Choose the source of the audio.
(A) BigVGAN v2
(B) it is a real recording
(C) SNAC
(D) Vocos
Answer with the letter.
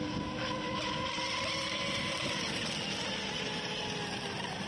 B